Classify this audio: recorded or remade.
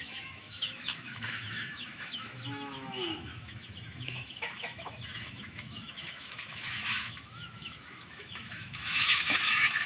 remade